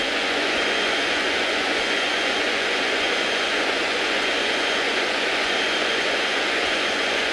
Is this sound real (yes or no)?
no